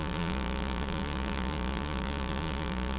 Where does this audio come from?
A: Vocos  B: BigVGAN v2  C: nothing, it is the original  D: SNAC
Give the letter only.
A